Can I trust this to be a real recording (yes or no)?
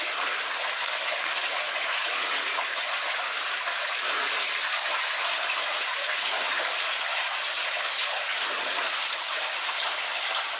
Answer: yes